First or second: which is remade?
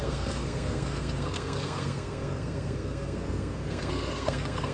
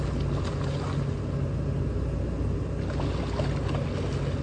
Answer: first